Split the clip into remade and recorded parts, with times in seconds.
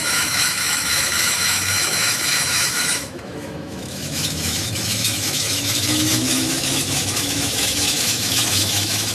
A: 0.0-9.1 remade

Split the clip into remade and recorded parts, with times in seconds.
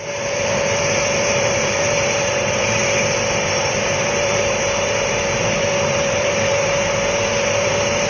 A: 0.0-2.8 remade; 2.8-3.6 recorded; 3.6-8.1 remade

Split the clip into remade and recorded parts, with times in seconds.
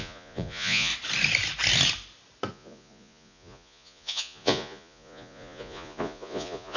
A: 0.0-0.9 remade; 0.9-2.5 recorded; 2.5-6.8 remade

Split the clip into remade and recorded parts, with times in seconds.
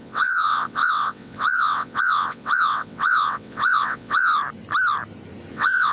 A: 0.0-4.3 remade; 4.3-5.5 recorded; 5.5-5.9 remade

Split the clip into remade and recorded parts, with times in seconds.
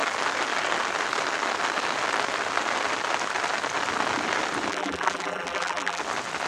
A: 0.0-4.7 recorded; 4.7-6.0 remade; 6.0-6.5 recorded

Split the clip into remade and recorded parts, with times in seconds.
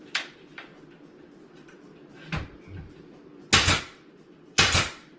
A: 0.0-0.7 remade; 0.7-3.8 recorded; 3.8-5.2 remade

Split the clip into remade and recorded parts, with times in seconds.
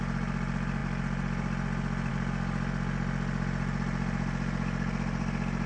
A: 0.0-5.7 recorded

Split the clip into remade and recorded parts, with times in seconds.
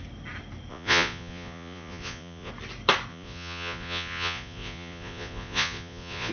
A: 0.0-0.7 recorded; 0.7-2.5 remade; 2.5-3.1 recorded; 3.1-6.3 remade